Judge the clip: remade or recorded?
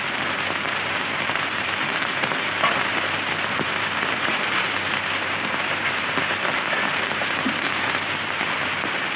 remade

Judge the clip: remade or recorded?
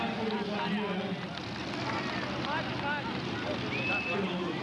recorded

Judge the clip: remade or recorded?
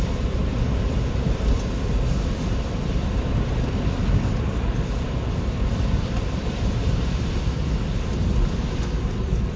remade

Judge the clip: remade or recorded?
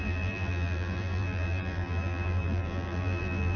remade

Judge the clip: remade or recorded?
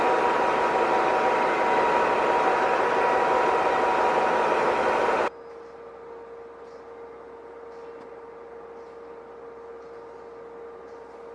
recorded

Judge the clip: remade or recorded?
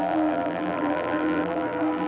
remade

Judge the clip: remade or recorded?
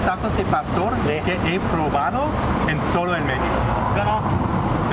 recorded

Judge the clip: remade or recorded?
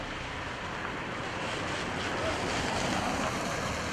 recorded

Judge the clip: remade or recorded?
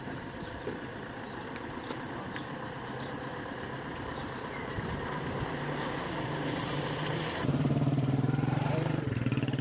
remade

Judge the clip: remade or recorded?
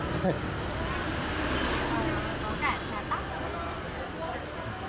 recorded